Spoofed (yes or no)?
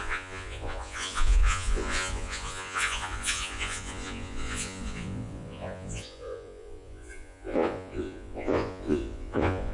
yes